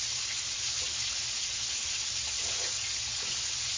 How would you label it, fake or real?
real